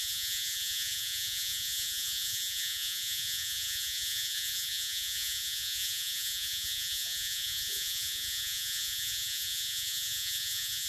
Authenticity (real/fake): fake